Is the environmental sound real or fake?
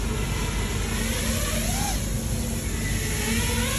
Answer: real